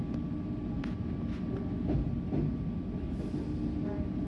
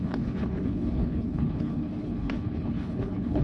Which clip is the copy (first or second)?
second